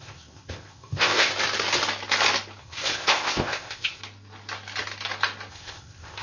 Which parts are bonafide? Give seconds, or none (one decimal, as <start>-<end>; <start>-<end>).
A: 1.3-2.6; 4.0-5.5